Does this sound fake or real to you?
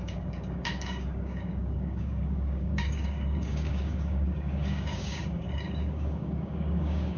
fake